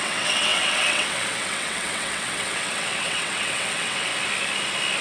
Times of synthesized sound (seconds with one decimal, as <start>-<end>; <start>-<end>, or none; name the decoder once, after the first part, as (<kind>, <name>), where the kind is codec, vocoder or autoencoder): 0.0-4.1 (vocoder, WaveNeXt)